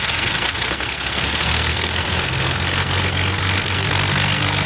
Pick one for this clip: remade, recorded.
remade